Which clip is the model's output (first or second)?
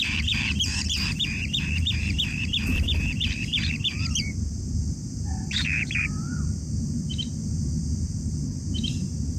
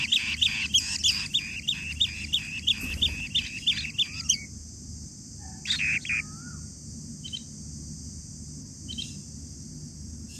first